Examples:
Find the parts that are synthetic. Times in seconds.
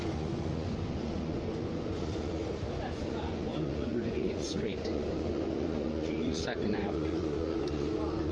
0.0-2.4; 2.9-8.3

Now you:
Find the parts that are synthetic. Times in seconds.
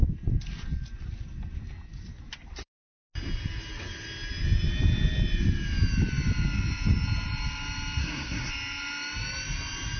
8.0-8.5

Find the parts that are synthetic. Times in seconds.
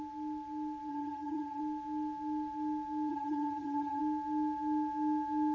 0.9-1.6; 3.1-4.0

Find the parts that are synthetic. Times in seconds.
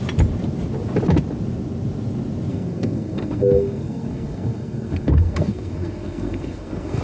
2.5-7.0